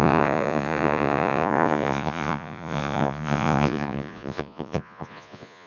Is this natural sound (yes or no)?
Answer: no